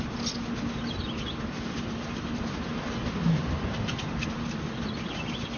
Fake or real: real